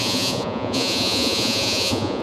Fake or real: fake